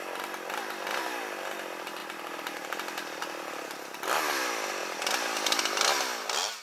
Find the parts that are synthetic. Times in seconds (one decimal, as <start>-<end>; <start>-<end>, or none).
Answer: none